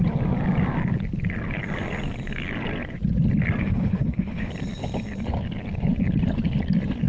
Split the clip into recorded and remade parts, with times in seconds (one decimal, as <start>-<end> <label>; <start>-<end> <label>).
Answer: 0.0-3.6 recorded; 3.6-4.5 remade; 4.5-7.1 recorded